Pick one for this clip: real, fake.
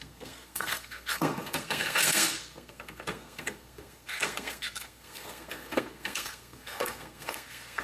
fake